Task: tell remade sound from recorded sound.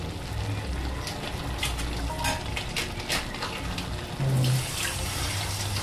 recorded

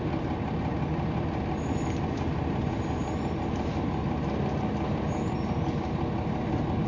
recorded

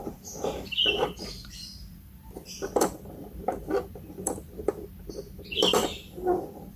remade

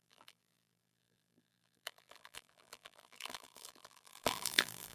remade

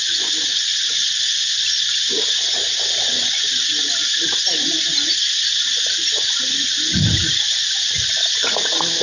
remade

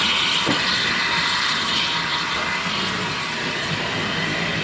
recorded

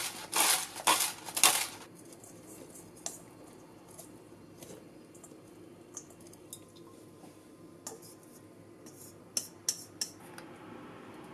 recorded